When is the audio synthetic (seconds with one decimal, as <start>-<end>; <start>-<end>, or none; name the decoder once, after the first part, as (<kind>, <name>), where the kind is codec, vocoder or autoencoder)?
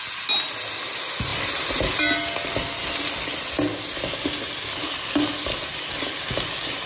none